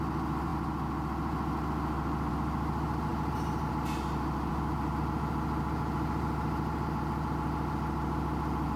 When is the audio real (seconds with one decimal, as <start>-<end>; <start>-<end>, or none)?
0.0-8.8